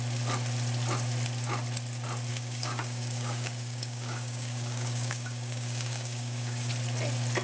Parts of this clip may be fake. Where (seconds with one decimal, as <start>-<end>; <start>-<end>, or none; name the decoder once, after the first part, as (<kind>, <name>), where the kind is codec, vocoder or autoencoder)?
2.3-6.7 (codec, DAC)